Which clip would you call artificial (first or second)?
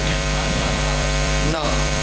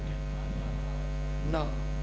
first